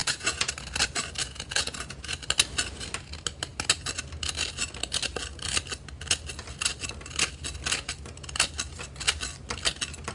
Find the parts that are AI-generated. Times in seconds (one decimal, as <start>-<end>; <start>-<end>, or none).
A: 0.0-0.5; 1.2-2.1